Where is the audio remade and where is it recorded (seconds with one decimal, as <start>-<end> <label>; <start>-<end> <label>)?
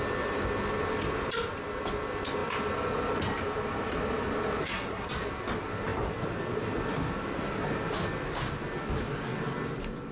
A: 0.0-4.6 recorded; 4.6-5.1 remade; 5.1-10.1 recorded